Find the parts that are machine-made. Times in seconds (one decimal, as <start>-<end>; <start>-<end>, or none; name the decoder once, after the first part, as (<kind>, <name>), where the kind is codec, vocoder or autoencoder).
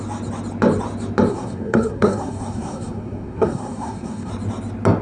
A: 1.3-4.3 (codec, SNAC)